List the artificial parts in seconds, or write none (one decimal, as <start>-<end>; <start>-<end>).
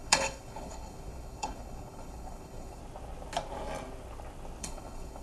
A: 0.0-2.8; 4.6-5.2